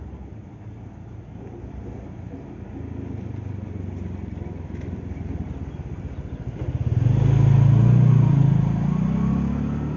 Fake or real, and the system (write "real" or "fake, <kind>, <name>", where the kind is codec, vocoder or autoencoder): real